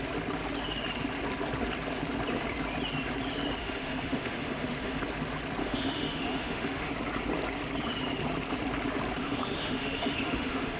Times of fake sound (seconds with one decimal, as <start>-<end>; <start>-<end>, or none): 3.6-5.0; 5.6-6.9; 9.2-10.8